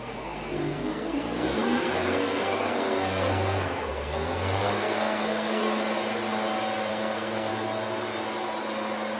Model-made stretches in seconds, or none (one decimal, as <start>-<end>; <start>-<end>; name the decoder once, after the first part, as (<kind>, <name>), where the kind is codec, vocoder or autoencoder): 0.0-5.6 (codec, SNAC); 6.9-7.5